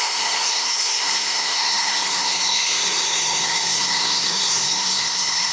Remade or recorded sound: remade